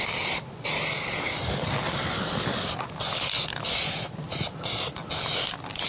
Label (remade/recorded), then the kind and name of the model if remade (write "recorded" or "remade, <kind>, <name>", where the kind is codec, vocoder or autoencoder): recorded